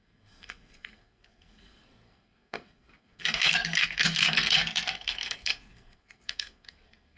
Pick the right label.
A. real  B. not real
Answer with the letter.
B